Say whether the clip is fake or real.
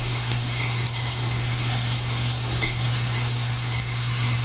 fake